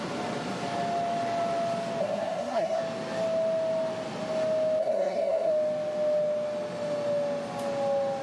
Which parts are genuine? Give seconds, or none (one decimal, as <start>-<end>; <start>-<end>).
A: 0.0-2.0; 2.8-4.8; 5.5-8.2